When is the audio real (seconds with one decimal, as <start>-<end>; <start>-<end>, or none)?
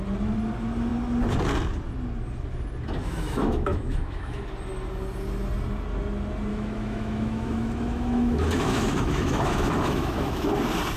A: 0.0-3.0; 4.4-6.5; 10.5-11.0